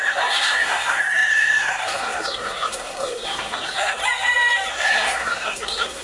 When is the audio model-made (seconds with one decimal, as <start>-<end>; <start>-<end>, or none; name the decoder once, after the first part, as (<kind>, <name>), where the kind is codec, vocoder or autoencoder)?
0.0-4.0 (codec, SNAC); 4.7-6.0